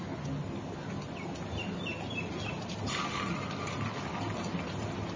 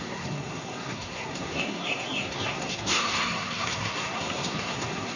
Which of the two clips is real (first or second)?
first